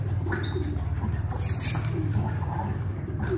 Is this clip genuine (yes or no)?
no